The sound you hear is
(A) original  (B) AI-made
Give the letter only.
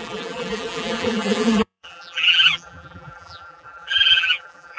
B